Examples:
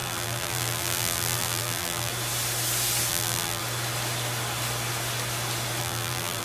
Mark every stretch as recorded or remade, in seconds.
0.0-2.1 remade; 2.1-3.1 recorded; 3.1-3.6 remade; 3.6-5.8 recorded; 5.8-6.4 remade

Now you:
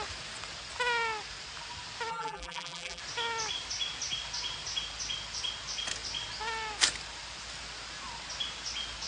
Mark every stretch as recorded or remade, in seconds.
0.0-2.1 recorded; 2.1-3.0 remade; 3.0-9.1 recorded

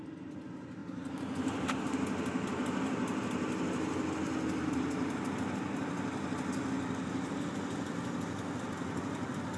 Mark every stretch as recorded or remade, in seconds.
0.0-0.8 recorded; 0.8-1.8 remade; 1.8-4.6 recorded; 4.6-5.3 remade; 5.3-9.6 recorded

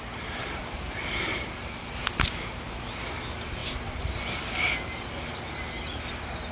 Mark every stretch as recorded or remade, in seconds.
0.0-0.6 recorded; 0.6-2.0 remade; 2.0-3.6 recorded; 3.6-5.1 remade; 5.1-6.5 recorded

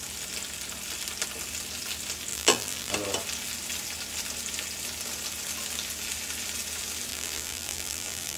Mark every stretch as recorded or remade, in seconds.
0.0-2.3 recorded; 2.3-2.9 remade; 2.9-7.1 recorded; 7.1-8.4 remade

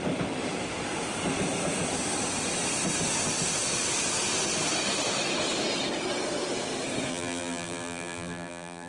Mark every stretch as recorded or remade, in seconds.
0.0-7.1 recorded; 7.1-8.9 remade

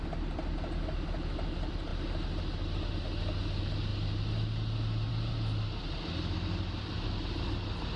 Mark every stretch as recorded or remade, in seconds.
0.0-8.0 recorded

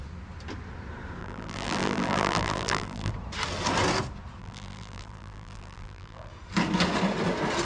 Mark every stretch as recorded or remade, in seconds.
0.0-1.2 recorded; 1.2-3.1 remade; 3.1-4.4 recorded; 4.4-6.3 remade; 6.3-7.6 recorded